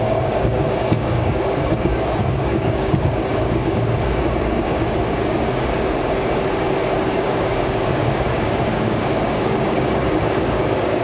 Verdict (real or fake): fake